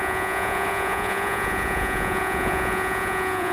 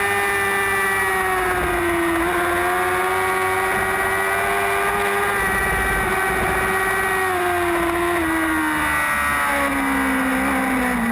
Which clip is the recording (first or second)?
second